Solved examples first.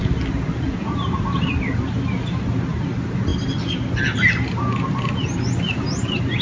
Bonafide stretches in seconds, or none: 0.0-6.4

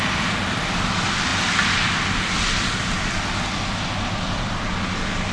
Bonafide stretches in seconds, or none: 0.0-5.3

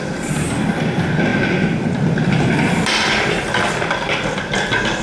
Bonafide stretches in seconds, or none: 0.0-5.0

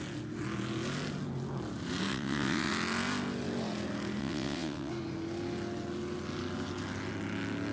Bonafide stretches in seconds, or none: 0.0-2.1; 2.7-4.2; 4.9-7.7

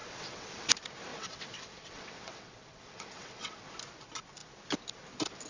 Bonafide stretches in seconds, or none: 0.7-1.1; 3.7-5.5

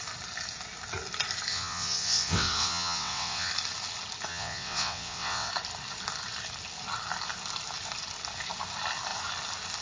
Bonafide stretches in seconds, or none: 0.0-1.5; 3.5-4.3; 5.5-9.8

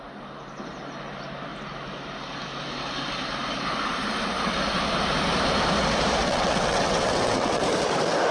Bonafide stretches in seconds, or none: 0.0-6.2; 7.6-8.3

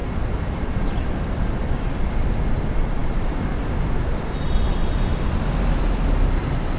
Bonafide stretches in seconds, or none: 0.0-6.8